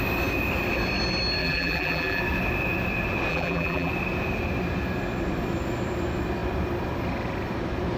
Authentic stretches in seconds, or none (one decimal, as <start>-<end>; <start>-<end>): 0.0-1.4; 2.2-3.3; 3.9-8.0